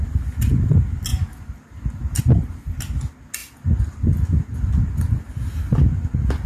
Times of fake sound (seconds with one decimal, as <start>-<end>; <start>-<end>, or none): none